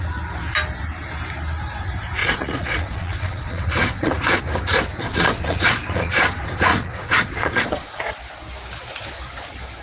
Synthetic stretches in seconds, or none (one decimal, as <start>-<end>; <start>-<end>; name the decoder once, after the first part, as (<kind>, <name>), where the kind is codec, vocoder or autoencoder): 2.2-4.4 (vocoder, Vocos); 4.9-6.2; 6.7-8.0